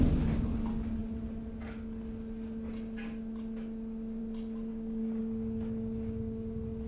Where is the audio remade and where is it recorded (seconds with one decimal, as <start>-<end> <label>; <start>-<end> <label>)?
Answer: 0.0-4.7 recorded; 4.7-5.2 remade; 5.2-6.9 recorded